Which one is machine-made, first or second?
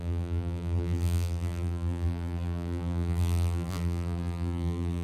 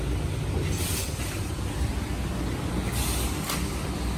first